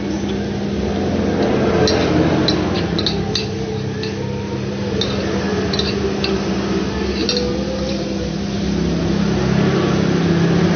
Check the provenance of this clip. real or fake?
real